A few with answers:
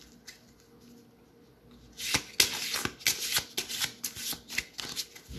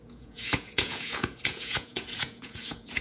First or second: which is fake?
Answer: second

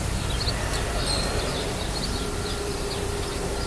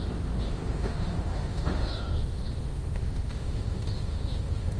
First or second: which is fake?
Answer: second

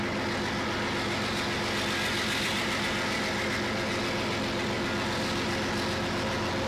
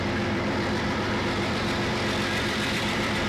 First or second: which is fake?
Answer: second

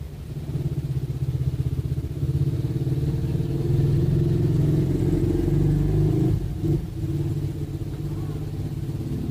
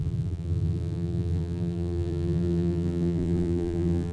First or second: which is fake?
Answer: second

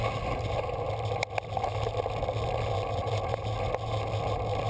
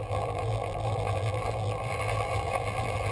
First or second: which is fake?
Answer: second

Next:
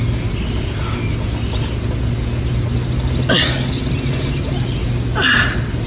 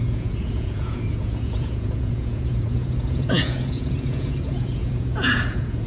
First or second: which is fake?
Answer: second